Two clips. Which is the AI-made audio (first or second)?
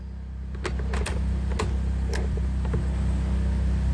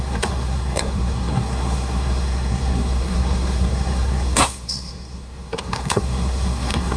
second